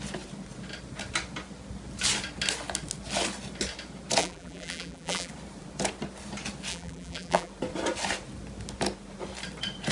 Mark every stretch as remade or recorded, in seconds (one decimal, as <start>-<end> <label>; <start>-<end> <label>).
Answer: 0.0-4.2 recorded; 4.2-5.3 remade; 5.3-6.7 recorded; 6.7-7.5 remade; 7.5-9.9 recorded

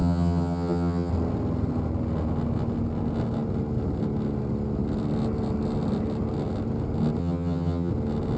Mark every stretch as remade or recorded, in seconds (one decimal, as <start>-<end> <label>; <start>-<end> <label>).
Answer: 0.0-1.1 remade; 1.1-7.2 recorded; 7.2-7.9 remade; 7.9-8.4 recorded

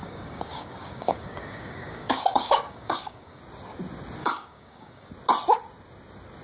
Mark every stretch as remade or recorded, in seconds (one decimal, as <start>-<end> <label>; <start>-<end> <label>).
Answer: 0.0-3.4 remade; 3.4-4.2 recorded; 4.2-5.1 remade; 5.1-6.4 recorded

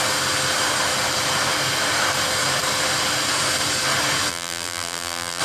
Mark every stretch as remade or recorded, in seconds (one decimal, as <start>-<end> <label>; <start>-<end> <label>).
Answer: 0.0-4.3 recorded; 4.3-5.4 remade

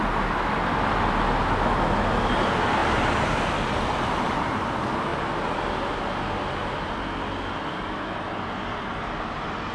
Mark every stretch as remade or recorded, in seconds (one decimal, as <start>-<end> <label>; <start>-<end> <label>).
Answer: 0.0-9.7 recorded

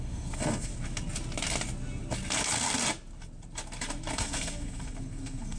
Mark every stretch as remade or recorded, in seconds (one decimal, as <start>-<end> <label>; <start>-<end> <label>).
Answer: 0.0-0.7 remade; 0.7-4.1 recorded; 4.1-5.6 remade